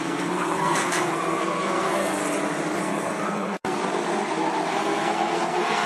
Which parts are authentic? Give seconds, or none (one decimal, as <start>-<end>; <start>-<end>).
2.2-2.8; 3.8-4.8